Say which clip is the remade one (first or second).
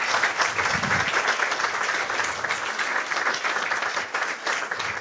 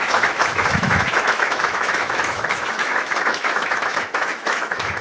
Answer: second